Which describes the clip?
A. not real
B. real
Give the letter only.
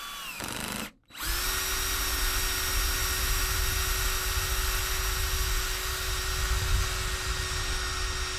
B